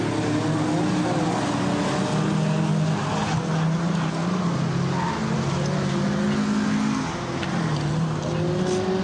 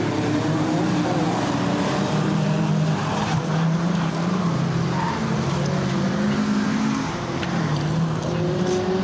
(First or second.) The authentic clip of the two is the first